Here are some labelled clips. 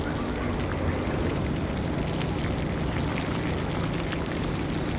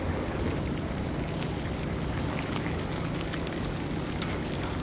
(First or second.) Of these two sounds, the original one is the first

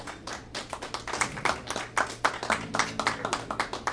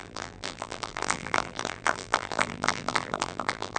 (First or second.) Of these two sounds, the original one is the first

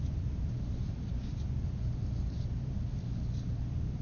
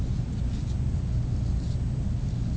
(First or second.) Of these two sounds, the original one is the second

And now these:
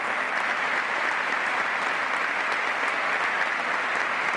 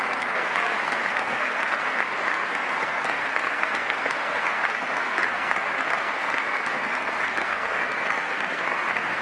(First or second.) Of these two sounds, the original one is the first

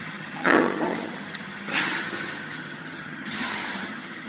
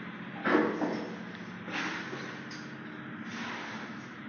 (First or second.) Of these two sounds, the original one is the second